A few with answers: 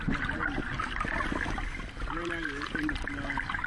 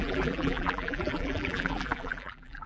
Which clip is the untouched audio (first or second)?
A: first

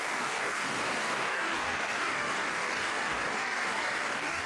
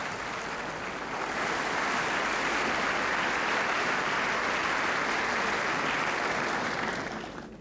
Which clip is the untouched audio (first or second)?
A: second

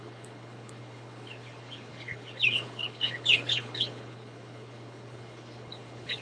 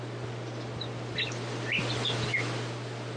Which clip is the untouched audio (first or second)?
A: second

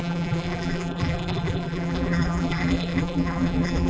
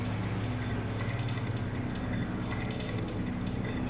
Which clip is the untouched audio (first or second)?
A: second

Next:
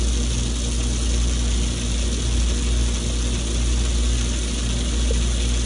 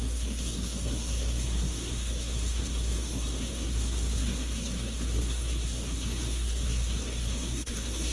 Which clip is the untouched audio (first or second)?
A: first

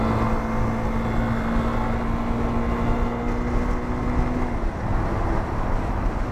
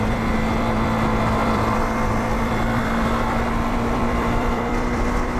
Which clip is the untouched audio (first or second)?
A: first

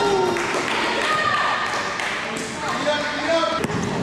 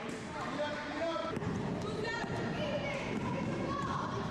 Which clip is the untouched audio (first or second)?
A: first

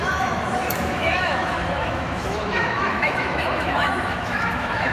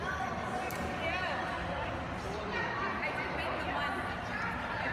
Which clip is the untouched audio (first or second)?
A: second